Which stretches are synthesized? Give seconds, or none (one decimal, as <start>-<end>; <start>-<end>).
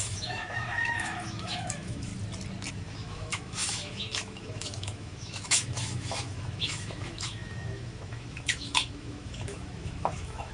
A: 0.0-2.1; 2.7-10.5